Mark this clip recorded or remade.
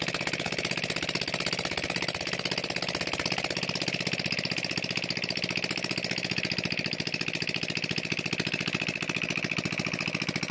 recorded